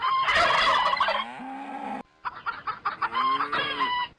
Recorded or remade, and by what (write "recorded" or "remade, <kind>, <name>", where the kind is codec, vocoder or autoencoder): recorded